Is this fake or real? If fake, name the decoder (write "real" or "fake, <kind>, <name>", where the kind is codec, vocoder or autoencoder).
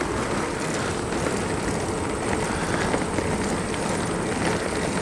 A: real